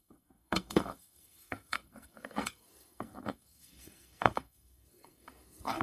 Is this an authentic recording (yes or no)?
no